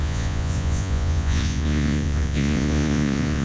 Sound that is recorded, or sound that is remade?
remade